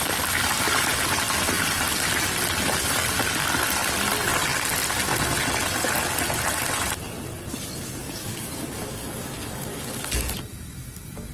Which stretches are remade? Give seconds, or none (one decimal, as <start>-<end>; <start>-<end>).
8.0-10.3